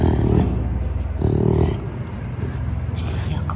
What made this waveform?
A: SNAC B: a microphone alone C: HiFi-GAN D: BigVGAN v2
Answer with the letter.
B